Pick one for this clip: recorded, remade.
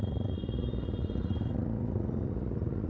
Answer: remade